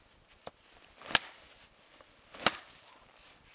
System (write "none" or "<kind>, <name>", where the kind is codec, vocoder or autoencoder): none